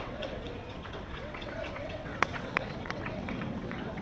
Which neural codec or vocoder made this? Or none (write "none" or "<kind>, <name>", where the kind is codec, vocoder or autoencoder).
vocoder, WaveNeXt